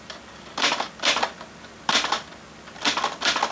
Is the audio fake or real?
real